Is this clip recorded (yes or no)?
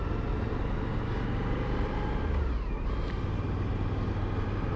yes